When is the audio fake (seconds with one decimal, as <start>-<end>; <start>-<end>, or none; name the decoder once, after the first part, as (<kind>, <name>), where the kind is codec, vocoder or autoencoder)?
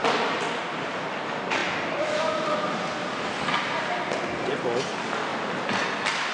none